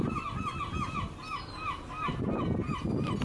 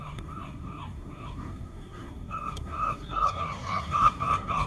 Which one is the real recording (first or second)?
first